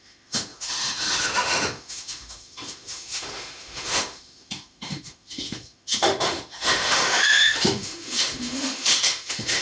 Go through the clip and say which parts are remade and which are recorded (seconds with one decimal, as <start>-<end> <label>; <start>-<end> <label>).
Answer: 0.0-9.6 remade